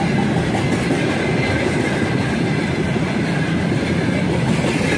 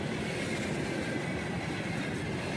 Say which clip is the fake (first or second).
first